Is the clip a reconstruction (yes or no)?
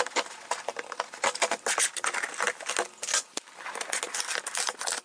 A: no